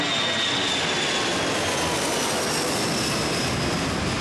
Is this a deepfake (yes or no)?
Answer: no